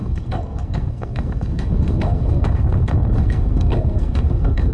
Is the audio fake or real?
fake